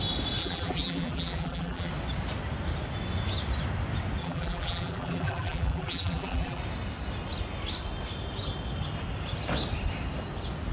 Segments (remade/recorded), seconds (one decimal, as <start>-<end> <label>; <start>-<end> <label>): 0.0-0.4 recorded; 0.4-1.9 remade; 1.9-4.2 recorded; 4.2-6.6 remade; 6.6-10.7 recorded